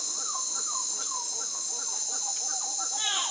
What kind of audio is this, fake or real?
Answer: real